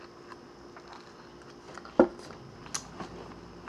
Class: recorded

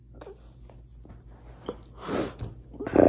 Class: recorded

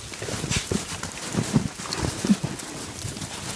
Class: recorded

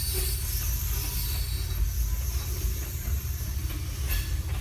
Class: recorded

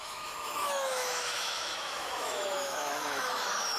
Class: remade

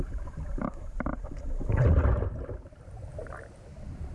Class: remade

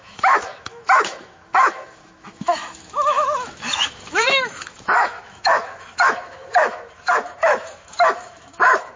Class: remade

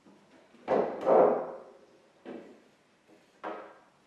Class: recorded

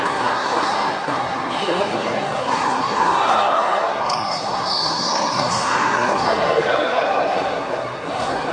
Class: remade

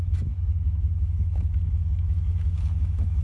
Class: remade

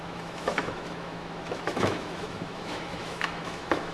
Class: remade